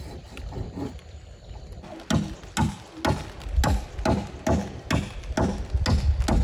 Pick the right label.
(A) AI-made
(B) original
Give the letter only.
B